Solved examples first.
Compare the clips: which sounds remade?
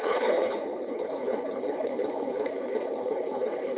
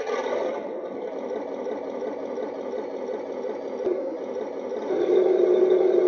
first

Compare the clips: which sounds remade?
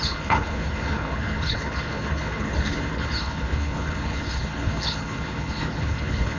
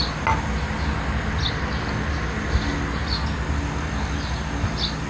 first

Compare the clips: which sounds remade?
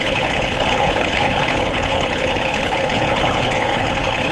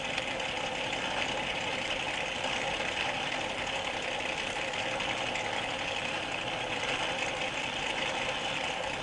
first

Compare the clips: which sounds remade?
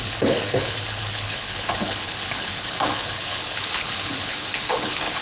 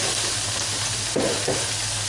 first